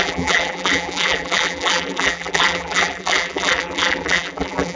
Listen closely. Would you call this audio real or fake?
fake